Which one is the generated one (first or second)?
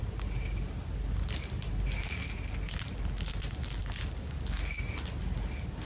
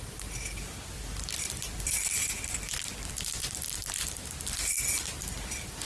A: second